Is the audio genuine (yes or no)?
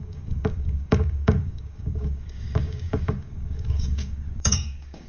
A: no